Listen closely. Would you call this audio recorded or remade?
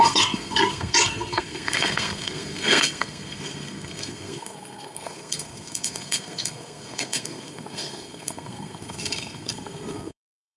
remade